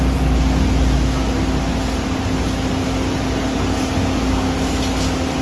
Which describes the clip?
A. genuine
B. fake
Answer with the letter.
A